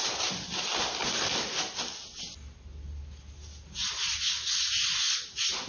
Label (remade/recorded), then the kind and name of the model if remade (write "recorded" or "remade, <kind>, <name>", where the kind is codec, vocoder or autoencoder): recorded